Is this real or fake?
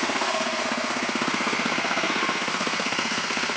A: fake